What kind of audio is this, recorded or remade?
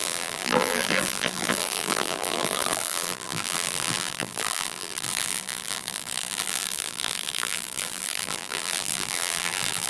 remade